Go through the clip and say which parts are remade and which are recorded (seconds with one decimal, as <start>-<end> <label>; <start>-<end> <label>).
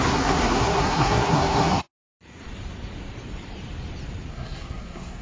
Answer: 0.0-1.9 remade; 1.9-4.3 recorded; 4.3-5.2 remade